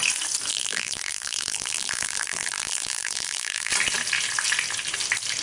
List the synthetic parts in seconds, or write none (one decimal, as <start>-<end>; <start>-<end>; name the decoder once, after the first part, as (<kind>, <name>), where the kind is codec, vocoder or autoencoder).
0.5-3.7 (vocoder, BigVGAN v2)